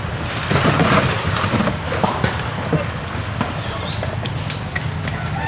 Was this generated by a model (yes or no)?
no